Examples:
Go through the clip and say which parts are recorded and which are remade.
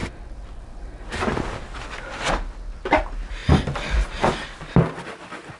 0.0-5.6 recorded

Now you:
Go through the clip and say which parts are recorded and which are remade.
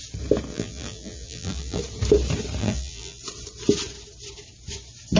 0.0-0.5 recorded; 0.5-1.8 remade; 1.8-2.6 recorded; 2.6-3.2 remade; 3.2-5.2 recorded